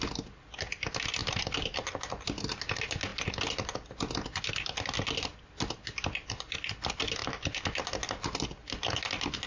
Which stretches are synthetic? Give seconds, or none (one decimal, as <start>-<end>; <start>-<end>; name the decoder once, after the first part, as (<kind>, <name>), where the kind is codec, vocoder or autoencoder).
none